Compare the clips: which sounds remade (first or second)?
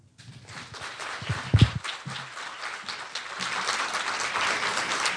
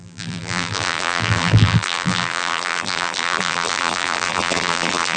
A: second